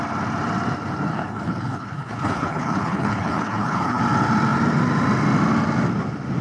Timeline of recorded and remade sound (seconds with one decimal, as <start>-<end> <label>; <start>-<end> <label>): 0.0-1.1 recorded; 1.1-4.0 remade; 4.0-6.4 recorded